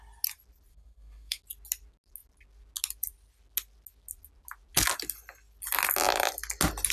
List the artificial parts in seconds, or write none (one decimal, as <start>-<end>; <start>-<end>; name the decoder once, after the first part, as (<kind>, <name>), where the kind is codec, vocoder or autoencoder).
0.7-1.4 (codec, SNAC)